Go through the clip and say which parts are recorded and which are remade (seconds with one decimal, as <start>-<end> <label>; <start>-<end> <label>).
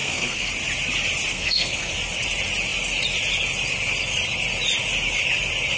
0.0-0.5 remade; 0.5-1.3 recorded; 1.3-1.9 remade; 1.9-5.8 recorded